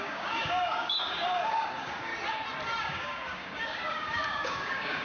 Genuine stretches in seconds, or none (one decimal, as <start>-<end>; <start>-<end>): 2.1-2.8